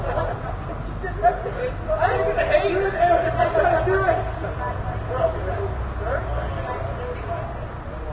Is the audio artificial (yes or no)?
no